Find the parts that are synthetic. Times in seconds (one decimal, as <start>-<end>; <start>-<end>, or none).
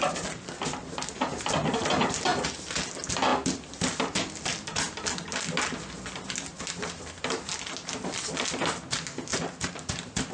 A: 9.3-10.3